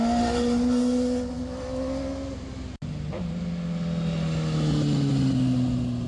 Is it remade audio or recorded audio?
recorded